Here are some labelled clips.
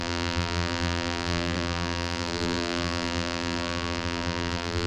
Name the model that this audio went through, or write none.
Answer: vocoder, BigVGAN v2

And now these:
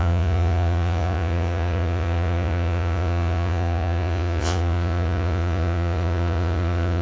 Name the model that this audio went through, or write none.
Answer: vocoder, Vocos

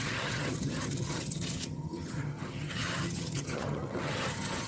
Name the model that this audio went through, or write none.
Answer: vocoder, HiFi-GAN